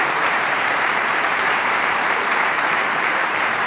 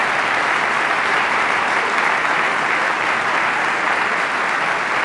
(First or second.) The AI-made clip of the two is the first